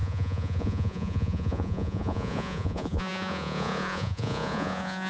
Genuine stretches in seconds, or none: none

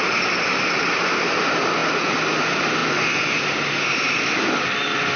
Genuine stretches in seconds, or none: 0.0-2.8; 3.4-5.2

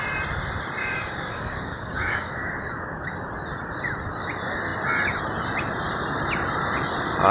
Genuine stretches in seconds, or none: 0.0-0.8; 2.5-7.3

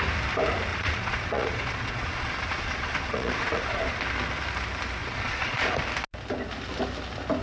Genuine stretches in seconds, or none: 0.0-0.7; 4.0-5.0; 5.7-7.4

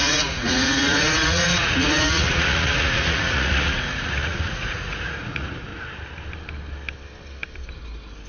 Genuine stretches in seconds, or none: 5.7-8.3